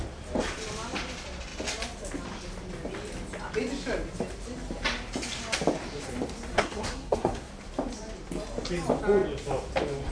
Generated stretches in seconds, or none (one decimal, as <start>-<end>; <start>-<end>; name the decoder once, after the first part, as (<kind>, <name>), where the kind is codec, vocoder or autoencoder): 6.5-7.5 (codec, SNAC)